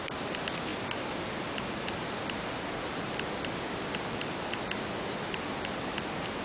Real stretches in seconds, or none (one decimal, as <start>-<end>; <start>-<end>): 0.0-6.4